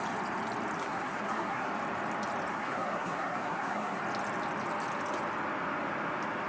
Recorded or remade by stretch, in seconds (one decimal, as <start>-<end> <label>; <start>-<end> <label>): 0.0-0.8 recorded; 0.8-1.7 remade; 1.7-2.5 recorded; 2.5-4.0 remade; 4.0-6.5 recorded